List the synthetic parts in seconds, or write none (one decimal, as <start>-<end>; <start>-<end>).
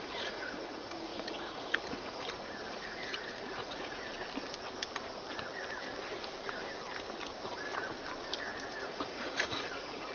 0.0-4.1; 8.7-10.1